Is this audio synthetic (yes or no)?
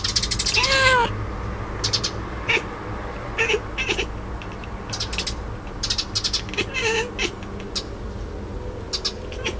no